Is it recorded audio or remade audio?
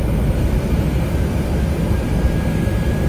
recorded